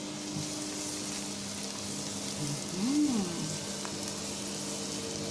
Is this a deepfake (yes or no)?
no